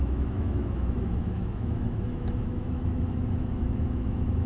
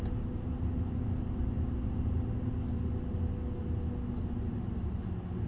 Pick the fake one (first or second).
first